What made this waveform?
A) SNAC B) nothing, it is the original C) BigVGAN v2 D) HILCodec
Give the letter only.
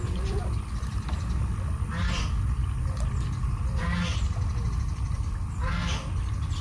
B